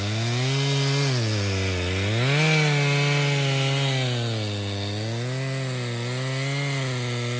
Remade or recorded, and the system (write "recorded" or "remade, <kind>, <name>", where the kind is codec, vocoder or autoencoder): recorded